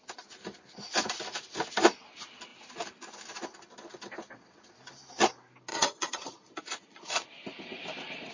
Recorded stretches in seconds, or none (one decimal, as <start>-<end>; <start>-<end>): 0.0-5.7; 7.3-8.3

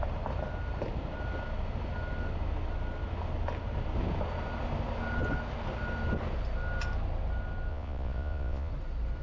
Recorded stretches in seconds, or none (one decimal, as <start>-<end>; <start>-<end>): 0.0-7.7; 8.7-9.2